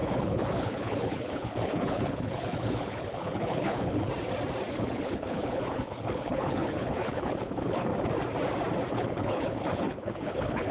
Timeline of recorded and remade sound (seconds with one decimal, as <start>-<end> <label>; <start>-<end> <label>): 0.0-4.1 remade; 4.1-4.7 recorded; 4.7-7.9 remade; 7.9-8.9 recorded; 8.9-10.7 remade